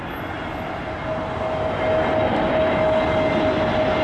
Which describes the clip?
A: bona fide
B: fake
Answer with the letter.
A